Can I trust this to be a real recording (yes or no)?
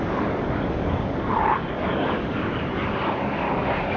no